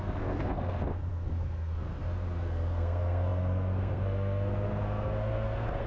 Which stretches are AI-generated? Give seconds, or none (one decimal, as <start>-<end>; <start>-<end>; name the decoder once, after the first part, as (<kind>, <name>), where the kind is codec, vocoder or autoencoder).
0.0-5.9 (codec, SNAC)